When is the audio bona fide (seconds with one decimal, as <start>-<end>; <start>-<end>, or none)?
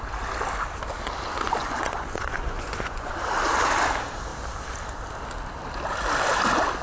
0.0-1.6; 3.1-6.8